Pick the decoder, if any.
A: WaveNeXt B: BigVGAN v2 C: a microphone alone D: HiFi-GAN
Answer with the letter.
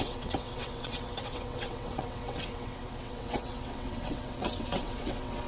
A